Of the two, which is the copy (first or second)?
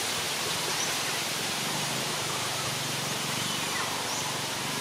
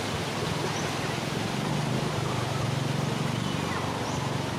first